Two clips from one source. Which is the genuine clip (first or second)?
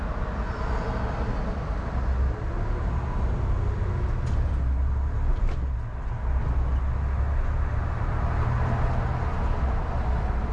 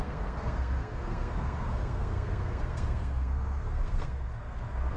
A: first